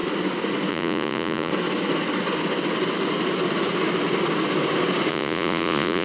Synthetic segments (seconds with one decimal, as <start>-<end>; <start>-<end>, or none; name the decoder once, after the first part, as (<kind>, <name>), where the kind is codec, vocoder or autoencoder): 0.7-1.5 (vocoder, Vocos); 5.1-6.0